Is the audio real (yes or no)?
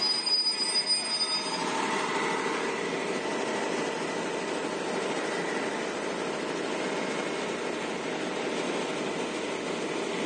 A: yes